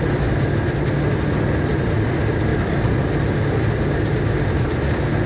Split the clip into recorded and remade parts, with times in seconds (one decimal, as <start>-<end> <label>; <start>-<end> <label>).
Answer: 0.0-2.5 recorded; 2.5-3.0 remade; 3.0-5.3 recorded